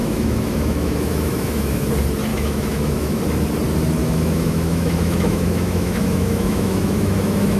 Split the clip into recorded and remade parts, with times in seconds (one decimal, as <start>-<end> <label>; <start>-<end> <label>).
0.0-1.9 remade; 1.9-2.3 recorded; 2.3-3.2 remade; 3.2-4.0 recorded; 4.0-7.6 remade